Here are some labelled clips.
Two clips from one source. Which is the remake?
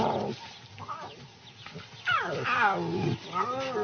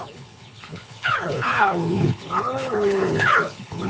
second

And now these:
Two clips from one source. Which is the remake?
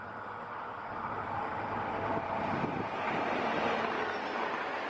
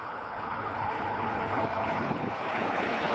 second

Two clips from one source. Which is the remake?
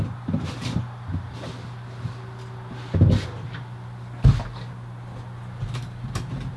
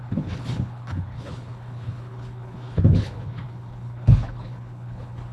second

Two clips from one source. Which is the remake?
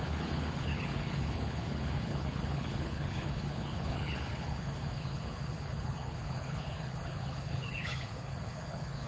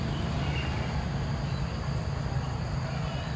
first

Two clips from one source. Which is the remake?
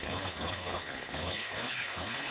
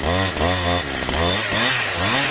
first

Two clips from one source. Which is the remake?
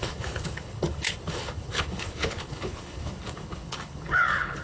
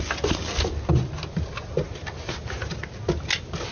first